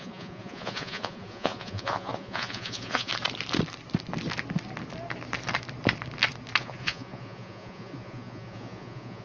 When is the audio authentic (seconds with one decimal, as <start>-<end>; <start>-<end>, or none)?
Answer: 3.1-6.6